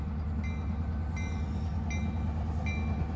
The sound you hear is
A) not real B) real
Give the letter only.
B